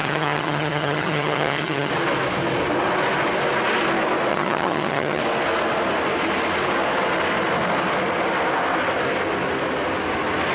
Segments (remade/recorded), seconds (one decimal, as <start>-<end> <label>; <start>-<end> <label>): 0.0-1.9 remade; 1.9-4.3 recorded; 4.3-5.2 remade; 5.2-10.5 recorded